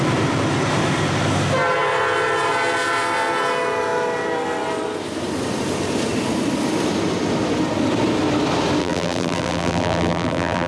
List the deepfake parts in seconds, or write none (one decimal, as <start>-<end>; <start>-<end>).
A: 8.8-10.7